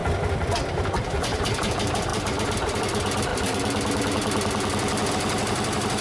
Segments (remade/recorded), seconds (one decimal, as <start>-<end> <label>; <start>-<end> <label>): 0.0-1.0 recorded; 1.0-3.3 remade; 3.3-5.1 recorded; 5.1-6.0 remade